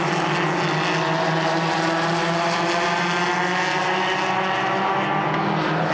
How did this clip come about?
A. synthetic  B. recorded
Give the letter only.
B